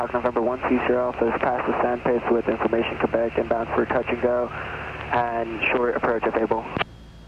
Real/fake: real